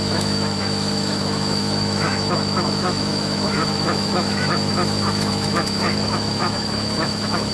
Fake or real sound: fake